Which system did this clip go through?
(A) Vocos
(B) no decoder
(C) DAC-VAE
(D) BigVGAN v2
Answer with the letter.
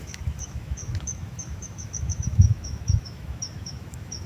C